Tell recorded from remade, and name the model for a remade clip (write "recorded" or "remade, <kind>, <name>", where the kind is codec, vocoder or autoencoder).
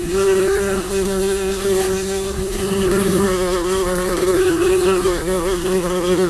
remade, codec, SNAC